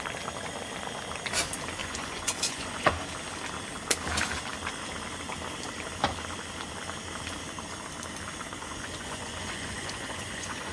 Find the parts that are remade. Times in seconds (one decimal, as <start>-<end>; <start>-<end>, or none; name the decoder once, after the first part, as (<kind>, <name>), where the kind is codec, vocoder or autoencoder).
1.8-2.9 (vocoder, Vocos); 8.5-10.7